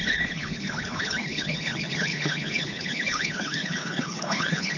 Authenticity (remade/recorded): remade